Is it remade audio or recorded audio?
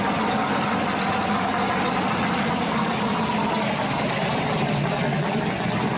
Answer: recorded